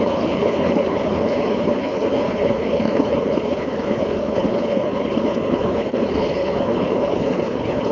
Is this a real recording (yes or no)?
no